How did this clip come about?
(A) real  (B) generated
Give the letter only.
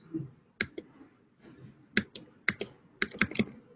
A